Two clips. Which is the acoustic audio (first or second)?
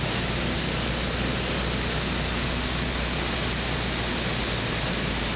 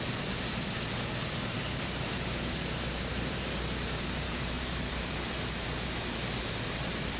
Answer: first